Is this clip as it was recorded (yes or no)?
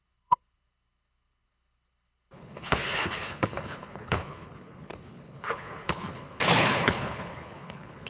no